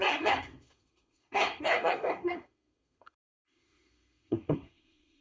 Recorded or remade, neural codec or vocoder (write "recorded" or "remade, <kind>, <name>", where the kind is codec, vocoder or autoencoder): remade, codec, SNAC